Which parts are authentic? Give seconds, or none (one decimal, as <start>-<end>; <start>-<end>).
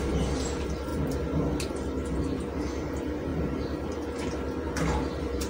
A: 0.0-3.3; 3.9-5.5